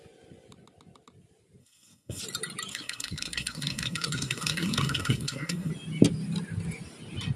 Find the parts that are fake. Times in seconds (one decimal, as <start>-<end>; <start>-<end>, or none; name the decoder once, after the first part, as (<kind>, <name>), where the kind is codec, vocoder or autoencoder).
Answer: 1.6-2.2 (codec, SNAC); 2.7-5.7